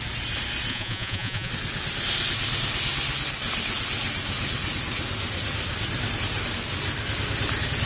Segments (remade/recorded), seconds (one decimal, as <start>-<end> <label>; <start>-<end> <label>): 0.0-0.7 recorded; 0.7-1.5 remade; 1.5-7.9 recorded